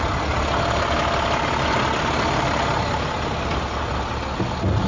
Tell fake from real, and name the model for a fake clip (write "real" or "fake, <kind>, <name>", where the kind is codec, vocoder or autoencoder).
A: real